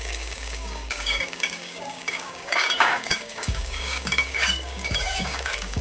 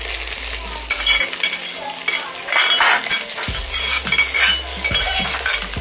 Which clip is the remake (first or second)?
first